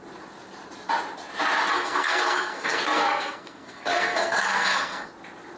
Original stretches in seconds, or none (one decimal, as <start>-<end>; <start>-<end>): 0.0-1.7; 5.1-5.6